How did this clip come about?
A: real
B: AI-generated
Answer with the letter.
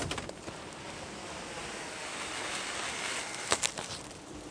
A